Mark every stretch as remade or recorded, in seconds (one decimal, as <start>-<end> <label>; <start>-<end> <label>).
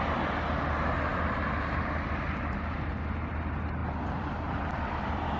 0.0-1.1 recorded; 1.1-2.6 remade; 2.6-3.8 recorded; 3.8-5.4 remade